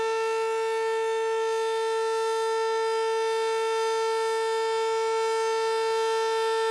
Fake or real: real